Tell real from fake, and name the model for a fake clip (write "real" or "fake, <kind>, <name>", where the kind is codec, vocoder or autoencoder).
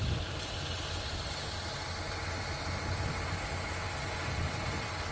real